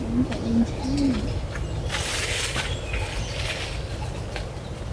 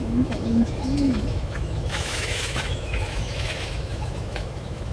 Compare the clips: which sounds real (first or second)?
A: first